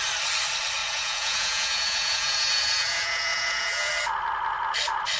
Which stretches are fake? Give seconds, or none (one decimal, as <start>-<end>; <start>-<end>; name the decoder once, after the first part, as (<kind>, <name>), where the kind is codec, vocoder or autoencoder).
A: 0.8-3.9 (vocoder, Vocos)